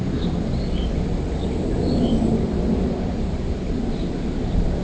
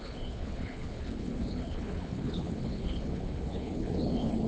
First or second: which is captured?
first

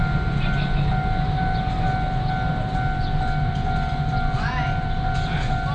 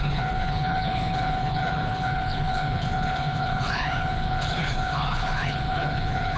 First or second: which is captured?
first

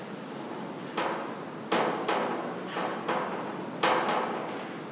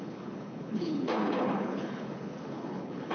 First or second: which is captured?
first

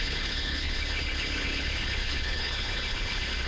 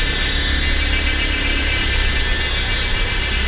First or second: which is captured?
second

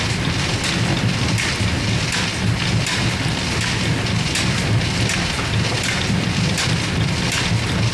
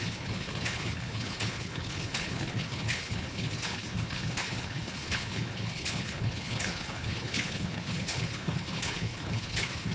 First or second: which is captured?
first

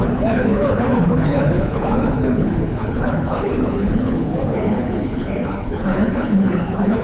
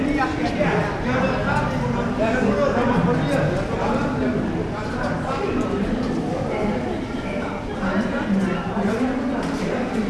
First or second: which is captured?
second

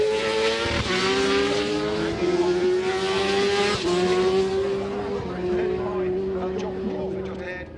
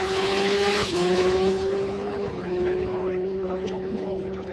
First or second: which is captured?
first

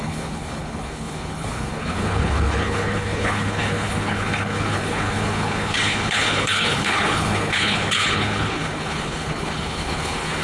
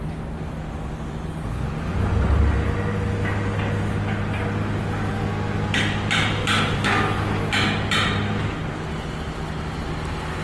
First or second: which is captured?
second